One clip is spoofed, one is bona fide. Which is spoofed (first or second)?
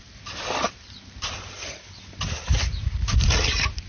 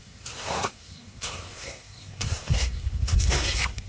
second